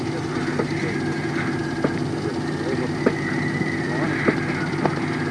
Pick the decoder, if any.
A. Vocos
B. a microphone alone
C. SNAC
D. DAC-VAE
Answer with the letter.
B